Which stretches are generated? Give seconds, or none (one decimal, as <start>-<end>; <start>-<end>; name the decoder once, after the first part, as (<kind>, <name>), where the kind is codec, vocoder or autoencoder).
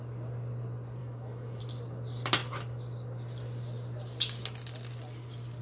1.0-1.6 (autoencoder, DAC-VAE)